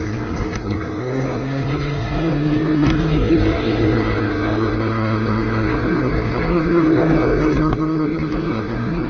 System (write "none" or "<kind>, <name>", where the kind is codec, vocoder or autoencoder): codec, SNAC